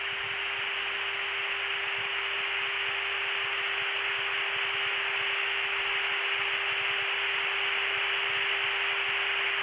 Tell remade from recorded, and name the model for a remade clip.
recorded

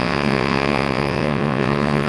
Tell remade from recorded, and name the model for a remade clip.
remade, vocoder, WaveNeXt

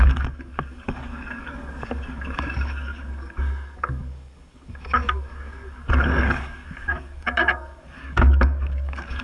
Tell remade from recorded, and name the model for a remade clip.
remade, codec, DAC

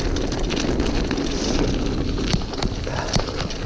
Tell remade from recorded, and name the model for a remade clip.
recorded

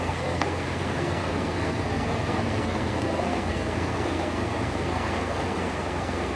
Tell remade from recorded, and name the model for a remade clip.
remade, codec, SNAC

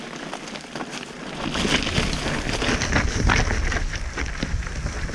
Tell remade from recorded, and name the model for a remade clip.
recorded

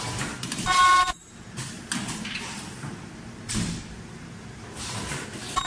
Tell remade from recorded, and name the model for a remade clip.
recorded